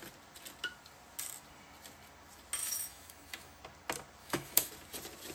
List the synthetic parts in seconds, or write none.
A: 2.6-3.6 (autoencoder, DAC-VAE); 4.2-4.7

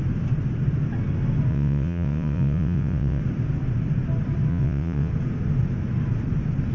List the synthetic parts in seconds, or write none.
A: 1.5-3.2 (vocoder, WaveNeXt); 4.5-5.1

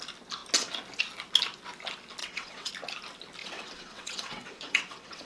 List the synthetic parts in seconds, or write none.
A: 2.2-2.7 (vocoder, WaveNeXt); 3.4-5.3

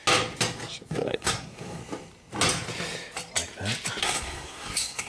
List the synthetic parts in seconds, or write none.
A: 0.9-1.8 (codec, SNAC); 4.0-5.1

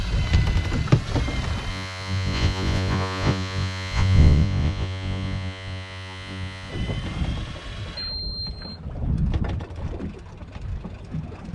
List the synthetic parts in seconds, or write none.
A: 1.7-6.7 (vocoder, Vocos)

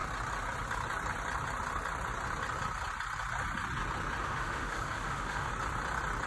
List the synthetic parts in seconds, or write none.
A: 4.2-5.5 (autoencoder, DAC-VAE)

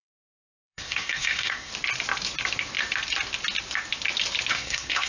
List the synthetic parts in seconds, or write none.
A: 0.0-1.7 (codec, SNAC); 4.5-5.1